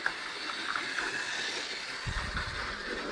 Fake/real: real